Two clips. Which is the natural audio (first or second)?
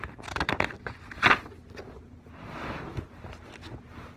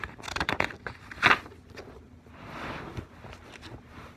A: first